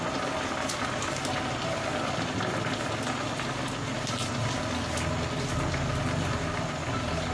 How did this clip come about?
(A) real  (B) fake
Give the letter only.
A